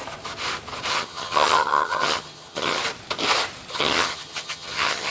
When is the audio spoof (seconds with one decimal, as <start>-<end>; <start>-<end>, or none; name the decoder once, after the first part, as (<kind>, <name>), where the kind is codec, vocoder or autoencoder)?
0.9-2.8 (vocoder, HiFi-GAN); 3.7-5.1